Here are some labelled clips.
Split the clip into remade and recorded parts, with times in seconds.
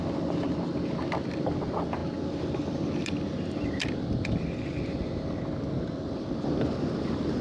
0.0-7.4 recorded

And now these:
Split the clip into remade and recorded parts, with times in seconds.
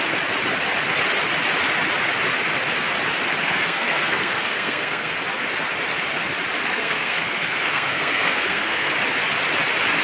0.0-3.4 recorded; 3.4-5.1 remade; 5.1-6.6 recorded; 6.6-8.9 remade; 8.9-10.0 recorded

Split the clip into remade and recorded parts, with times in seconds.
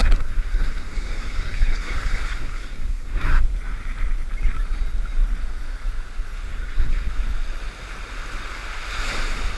0.0-3.4 remade; 3.4-6.5 recorded; 6.5-7.1 remade; 7.1-9.6 recorded